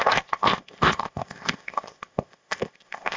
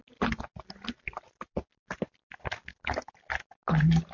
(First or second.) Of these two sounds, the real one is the second